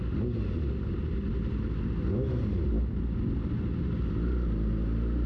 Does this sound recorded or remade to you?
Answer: recorded